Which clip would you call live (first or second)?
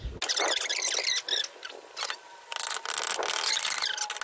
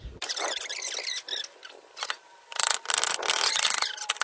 first